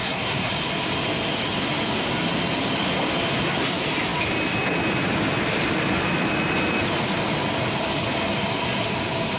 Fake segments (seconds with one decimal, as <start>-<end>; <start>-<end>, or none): 0.0-0.5